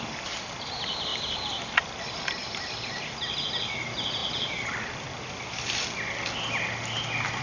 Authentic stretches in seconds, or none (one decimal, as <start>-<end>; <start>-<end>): 0.0-1.1; 2.0-2.4; 3.0-4.2; 5.2-7.4